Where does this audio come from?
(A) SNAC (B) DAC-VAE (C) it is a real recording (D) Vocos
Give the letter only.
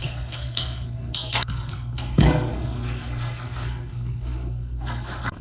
A